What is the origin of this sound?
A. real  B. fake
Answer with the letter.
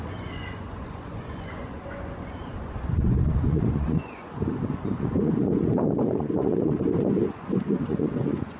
B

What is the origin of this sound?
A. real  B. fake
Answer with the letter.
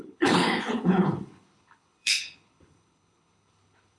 B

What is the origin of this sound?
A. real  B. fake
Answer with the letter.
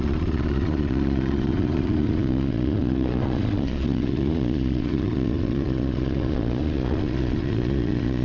B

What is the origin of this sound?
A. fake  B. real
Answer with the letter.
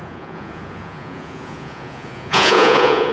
A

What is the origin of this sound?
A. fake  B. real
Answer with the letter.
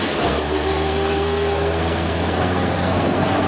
A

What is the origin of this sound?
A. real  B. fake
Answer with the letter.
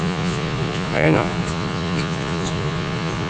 B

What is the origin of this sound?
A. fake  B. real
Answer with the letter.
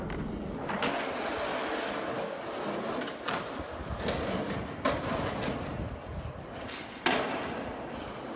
B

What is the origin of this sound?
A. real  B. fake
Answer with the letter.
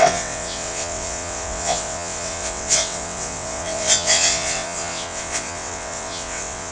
B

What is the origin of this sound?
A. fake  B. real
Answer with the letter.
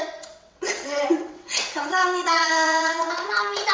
A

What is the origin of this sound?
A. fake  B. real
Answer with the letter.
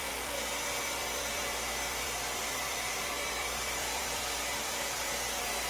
A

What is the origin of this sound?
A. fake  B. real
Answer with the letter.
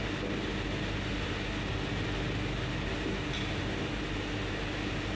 B